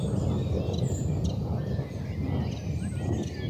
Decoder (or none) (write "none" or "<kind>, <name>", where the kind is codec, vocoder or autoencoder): none